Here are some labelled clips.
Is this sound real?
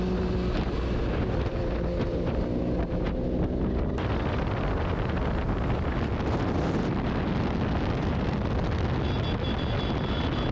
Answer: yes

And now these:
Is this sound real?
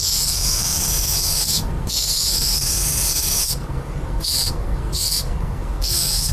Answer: no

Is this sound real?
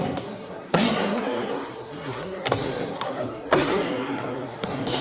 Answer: no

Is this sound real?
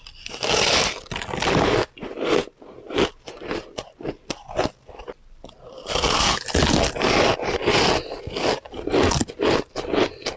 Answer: yes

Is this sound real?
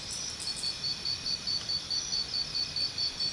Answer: yes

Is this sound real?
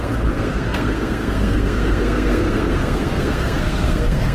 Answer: no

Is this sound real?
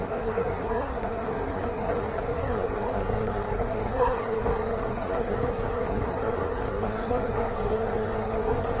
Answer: no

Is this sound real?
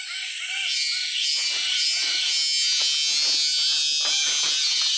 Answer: yes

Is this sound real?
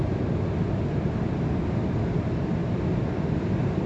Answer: yes